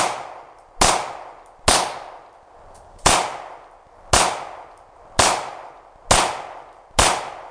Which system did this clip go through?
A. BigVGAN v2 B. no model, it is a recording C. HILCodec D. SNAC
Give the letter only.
B